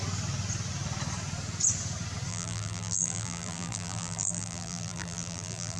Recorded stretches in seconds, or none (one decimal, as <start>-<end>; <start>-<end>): 0.0-2.3